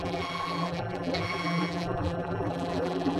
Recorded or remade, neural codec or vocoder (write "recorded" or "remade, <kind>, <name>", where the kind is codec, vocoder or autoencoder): remade, vocoder, BigVGAN v2